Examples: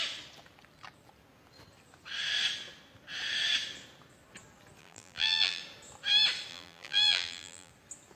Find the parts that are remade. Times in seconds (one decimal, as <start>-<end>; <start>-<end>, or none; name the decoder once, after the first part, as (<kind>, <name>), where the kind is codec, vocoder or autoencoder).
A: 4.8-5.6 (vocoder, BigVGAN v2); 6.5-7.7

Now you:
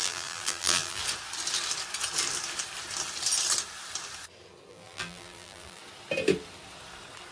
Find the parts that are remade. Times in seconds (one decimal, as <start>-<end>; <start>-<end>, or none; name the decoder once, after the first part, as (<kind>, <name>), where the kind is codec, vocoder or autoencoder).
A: 0.0-1.0 (vocoder, BigVGAN v2); 4.7-5.8

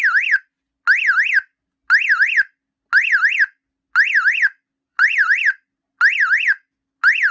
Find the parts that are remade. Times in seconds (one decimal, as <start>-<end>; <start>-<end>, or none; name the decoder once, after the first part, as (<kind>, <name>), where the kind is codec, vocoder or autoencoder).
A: 4.9-5.7 (vocoder, BigVGAN v2)

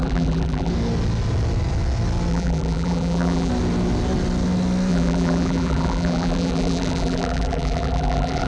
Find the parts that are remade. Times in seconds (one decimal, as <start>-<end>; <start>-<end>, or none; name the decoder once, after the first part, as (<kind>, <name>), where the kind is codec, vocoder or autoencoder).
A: 0.0-0.7 (vocoder, BigVGAN v2); 2.3-3.5; 4.9-8.5